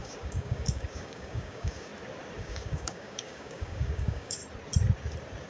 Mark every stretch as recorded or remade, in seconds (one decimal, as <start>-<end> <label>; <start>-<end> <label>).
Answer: 0.0-1.9 remade; 1.9-2.4 recorded; 2.4-4.4 remade; 4.4-5.5 recorded